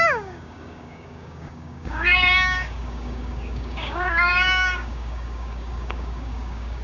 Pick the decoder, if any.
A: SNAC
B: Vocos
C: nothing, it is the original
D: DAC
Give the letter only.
D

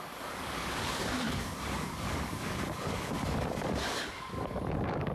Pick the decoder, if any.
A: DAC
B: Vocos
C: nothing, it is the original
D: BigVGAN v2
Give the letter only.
A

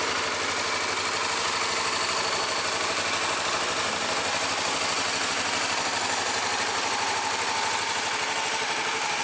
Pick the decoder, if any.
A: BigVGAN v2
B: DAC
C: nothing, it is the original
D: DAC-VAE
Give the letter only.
C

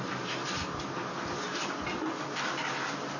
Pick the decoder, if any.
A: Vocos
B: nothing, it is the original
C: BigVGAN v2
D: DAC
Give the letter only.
B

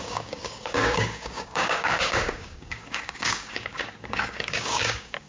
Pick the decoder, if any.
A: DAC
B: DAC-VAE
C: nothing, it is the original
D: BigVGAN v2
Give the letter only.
A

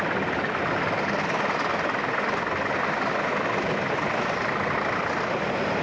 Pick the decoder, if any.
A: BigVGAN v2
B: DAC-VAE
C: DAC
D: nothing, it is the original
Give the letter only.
D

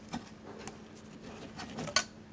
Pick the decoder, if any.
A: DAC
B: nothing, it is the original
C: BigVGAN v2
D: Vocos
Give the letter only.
B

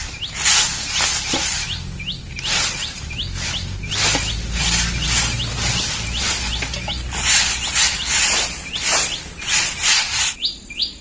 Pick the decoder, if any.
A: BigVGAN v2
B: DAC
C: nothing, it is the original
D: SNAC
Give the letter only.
C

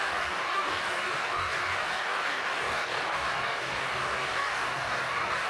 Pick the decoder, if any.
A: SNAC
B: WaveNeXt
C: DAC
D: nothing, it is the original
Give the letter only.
C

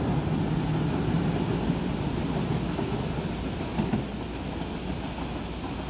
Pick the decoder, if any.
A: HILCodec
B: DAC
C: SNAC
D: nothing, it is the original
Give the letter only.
D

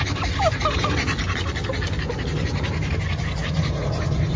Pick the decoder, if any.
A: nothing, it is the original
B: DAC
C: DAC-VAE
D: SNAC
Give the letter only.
A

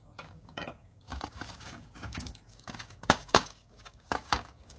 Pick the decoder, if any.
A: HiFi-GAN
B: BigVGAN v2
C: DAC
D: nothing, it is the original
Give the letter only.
C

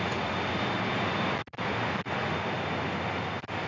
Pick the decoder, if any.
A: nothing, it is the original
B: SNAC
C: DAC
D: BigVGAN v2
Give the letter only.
A